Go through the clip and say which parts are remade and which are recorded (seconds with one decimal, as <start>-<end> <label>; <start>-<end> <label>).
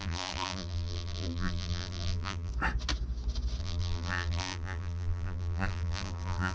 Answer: 0.0-2.5 remade; 2.5-3.6 recorded; 3.6-6.5 remade